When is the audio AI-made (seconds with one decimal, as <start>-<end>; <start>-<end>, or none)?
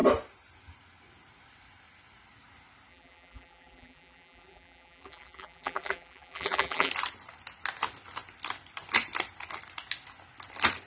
2.9-6.9